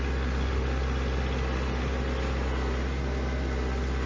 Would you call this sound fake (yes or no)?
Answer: no